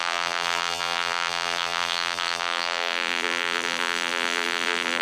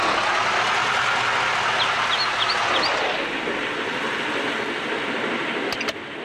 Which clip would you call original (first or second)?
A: second